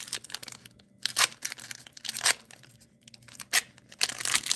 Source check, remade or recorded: recorded